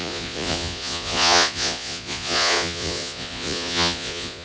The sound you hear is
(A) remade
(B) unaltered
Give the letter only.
A